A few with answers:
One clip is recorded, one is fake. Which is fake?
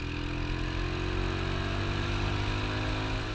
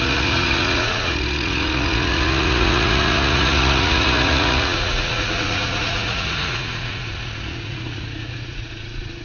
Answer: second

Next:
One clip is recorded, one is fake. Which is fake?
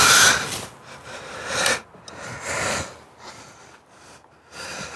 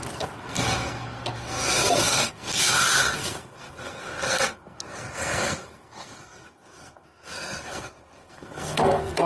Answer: second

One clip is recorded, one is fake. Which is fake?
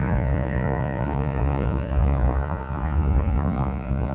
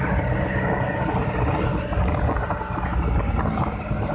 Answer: first